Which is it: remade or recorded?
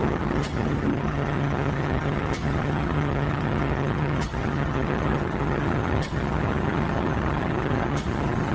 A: remade